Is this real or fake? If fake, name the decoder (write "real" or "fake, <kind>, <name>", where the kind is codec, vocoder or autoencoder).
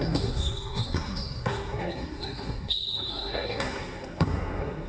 fake, codec, SNAC